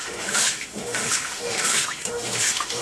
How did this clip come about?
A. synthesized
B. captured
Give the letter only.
A